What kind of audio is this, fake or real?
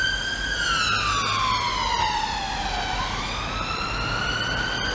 real